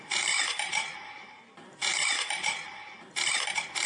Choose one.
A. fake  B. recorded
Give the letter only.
A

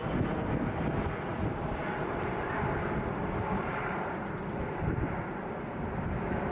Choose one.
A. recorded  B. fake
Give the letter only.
B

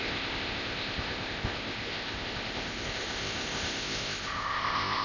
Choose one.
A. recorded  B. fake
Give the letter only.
B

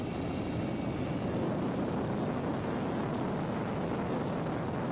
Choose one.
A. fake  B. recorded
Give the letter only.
B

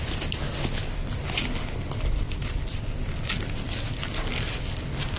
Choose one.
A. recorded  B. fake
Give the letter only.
A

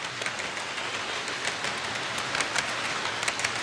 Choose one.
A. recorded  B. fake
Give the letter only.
A